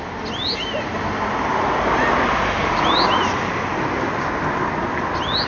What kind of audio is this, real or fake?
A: real